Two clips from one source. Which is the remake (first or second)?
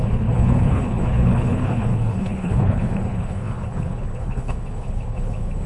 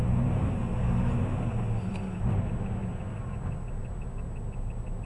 first